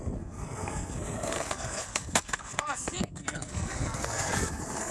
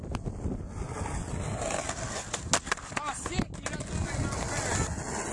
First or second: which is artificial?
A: first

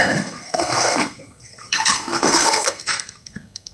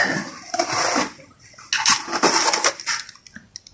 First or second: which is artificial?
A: first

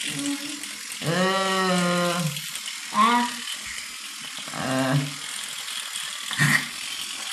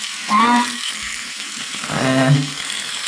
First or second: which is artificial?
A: second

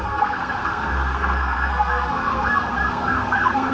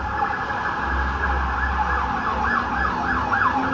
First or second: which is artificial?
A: first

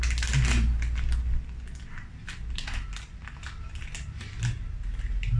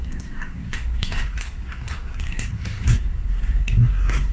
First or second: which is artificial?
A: second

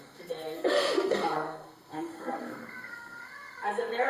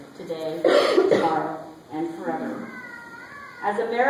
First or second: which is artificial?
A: first